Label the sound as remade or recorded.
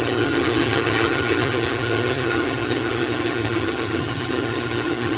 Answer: remade